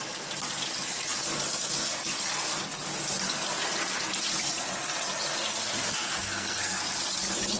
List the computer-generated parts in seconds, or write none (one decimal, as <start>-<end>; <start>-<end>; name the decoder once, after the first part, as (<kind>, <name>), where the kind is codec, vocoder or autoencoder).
5.9-6.8 (codec, SNAC)